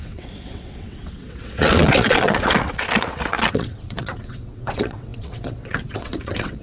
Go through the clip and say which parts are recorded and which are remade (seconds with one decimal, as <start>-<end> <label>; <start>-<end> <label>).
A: 0.0-6.6 remade